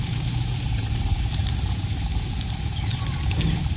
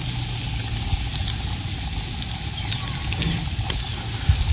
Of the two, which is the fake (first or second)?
first